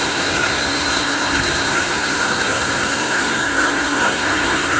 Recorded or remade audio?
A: remade